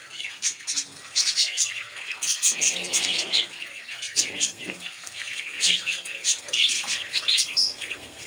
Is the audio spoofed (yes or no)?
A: yes